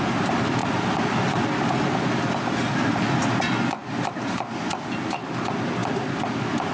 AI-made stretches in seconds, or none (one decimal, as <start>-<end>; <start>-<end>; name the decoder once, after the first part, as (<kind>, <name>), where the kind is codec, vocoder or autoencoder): none